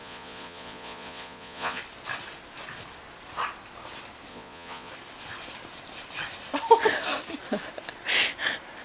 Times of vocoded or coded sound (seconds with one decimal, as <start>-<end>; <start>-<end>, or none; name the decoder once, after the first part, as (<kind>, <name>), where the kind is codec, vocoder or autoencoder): 0.0-1.8 (vocoder, Vocos); 4.3-4.9